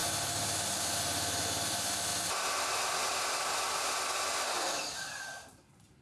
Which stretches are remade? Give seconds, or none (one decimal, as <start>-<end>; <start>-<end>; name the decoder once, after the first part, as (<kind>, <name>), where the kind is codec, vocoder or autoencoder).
none